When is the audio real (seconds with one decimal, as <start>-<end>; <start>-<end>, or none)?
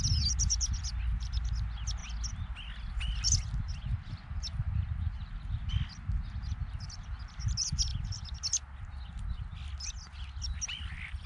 0.0-11.3